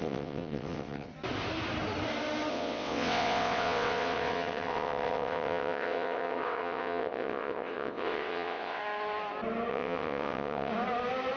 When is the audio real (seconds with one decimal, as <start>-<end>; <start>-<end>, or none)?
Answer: 1.1-2.5; 8.8-9.7; 10.7-11.4